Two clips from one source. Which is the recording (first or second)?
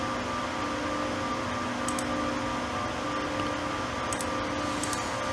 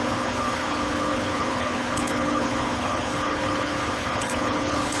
first